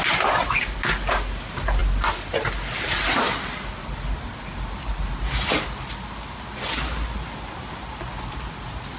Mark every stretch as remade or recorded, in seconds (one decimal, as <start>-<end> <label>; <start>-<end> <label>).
0.0-9.0 recorded